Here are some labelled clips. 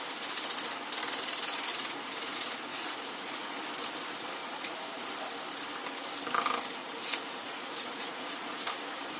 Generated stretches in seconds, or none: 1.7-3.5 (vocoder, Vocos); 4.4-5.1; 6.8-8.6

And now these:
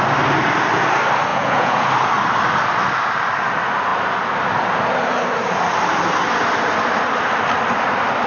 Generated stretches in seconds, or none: 1.3-1.9 (vocoder, Vocos)

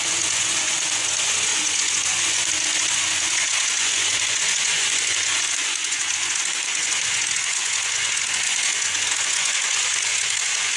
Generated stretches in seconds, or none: 0.0-10.8 (vocoder, Vocos)

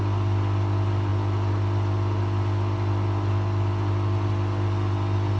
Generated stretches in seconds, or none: none